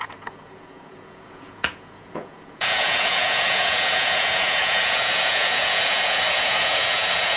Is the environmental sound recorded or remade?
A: remade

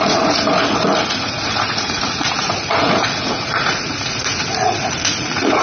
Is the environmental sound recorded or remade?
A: remade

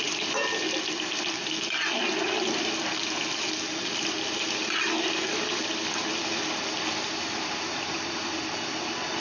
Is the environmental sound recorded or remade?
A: recorded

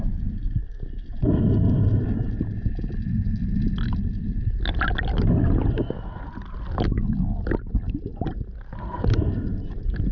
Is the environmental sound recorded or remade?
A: recorded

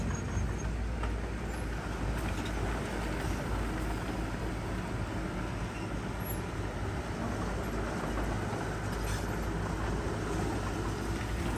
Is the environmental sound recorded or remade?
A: recorded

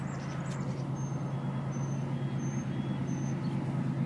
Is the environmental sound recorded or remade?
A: recorded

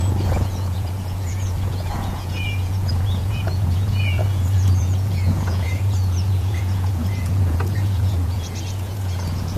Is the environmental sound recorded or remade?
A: remade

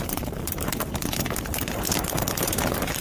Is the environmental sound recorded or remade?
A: remade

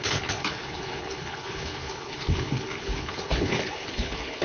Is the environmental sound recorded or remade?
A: remade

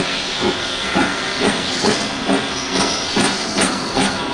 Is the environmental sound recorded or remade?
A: remade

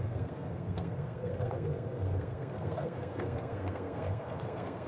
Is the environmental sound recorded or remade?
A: remade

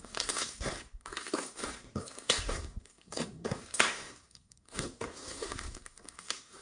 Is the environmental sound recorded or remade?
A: remade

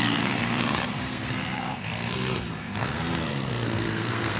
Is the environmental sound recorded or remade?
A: remade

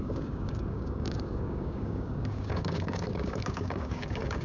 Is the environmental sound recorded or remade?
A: remade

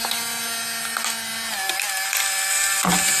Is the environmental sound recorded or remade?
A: recorded